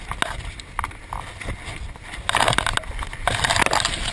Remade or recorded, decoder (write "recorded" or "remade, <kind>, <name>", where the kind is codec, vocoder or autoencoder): recorded